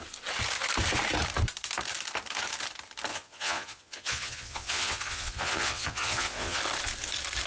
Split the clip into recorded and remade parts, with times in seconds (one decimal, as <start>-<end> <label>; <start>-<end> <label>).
0.0-3.1 recorded; 3.1-6.6 remade; 6.6-7.5 recorded